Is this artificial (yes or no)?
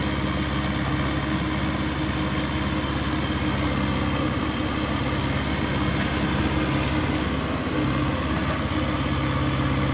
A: no